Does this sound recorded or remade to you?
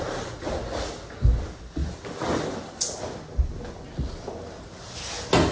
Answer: recorded